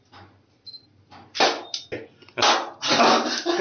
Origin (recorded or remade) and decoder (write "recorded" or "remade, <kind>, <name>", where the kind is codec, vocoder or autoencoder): recorded